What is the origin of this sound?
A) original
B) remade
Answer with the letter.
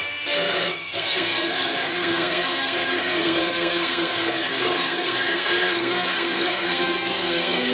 B